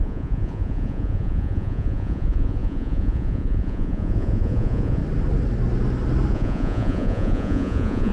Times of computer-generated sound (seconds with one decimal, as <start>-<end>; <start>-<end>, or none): 0.0-5.0; 6.3-8.1